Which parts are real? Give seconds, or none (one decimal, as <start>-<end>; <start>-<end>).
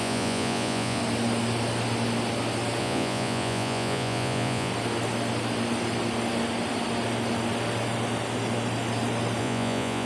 1.0-2.8; 4.7-9.4